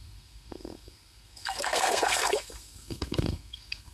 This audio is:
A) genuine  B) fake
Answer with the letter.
B